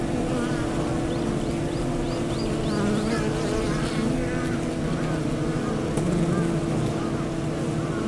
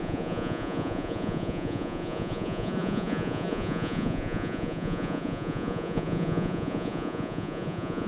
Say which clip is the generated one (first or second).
second